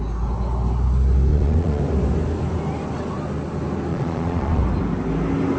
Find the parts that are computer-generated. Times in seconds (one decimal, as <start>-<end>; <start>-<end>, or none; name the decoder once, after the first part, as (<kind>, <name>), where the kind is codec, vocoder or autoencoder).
1.3-1.8 (vocoder, Vocos); 3.9-4.6